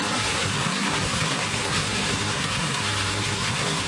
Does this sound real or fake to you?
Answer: fake